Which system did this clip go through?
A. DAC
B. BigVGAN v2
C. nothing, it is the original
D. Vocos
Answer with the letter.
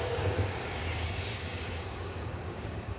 A